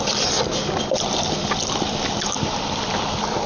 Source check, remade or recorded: remade